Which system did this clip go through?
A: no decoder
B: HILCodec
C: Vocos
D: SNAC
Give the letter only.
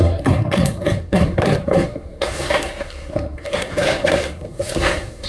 D